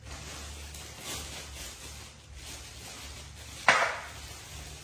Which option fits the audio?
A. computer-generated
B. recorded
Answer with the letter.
B